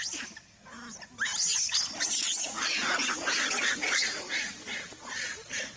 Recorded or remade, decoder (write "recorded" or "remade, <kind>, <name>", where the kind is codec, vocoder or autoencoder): recorded